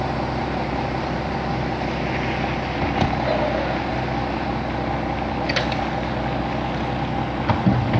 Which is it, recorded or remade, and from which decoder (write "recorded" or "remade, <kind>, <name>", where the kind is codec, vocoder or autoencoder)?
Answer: recorded